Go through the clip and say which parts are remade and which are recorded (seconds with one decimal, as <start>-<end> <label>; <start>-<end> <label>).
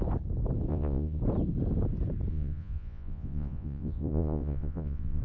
0.0-0.7 recorded; 0.7-1.2 remade; 1.2-2.3 recorded; 2.3-5.2 remade